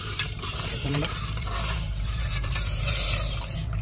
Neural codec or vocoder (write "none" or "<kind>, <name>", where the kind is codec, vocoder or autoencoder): vocoder, BigVGAN v2